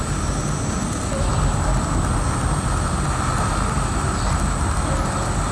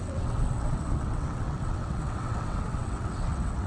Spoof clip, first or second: second